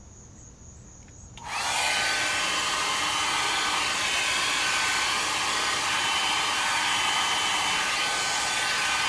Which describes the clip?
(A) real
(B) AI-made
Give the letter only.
A